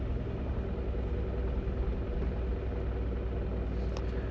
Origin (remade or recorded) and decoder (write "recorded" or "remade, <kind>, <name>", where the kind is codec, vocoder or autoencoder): recorded